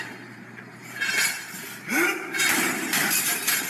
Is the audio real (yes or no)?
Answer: no